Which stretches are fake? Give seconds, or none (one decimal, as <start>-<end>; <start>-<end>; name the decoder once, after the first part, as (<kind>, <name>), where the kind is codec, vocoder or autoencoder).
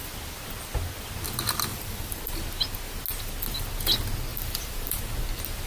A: 1.7-2.3 (vocoder, BigVGAN v2); 4.3-5.0